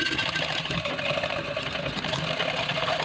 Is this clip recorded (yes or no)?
yes